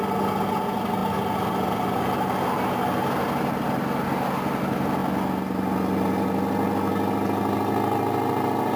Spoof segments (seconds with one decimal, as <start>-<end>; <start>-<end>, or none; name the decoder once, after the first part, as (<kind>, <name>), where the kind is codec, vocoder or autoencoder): none